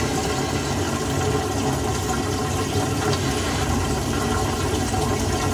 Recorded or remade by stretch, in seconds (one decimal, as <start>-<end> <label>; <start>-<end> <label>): 0.0-1.9 recorded; 1.9-5.5 remade